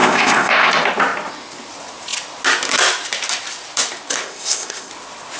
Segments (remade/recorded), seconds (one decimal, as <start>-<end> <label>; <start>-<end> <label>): 0.0-0.7 remade; 0.7-4.2 recorded; 4.2-4.9 remade; 4.9-5.4 recorded